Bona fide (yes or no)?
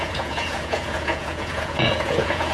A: no